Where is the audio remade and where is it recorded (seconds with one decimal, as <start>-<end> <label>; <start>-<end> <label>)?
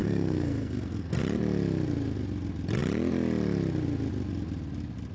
0.0-1.2 remade; 1.2-5.1 recorded